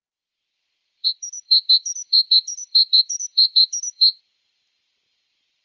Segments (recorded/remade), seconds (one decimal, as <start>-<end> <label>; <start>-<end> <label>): 0.0-0.8 recorded; 0.8-4.2 remade; 4.2-5.6 recorded